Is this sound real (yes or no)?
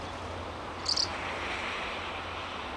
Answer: yes